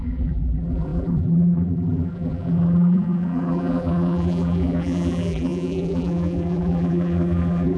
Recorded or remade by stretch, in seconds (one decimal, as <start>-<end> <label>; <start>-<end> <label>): 0.0-7.8 remade